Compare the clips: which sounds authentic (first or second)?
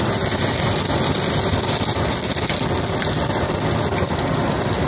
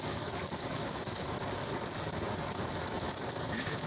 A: first